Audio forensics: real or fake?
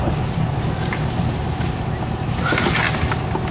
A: real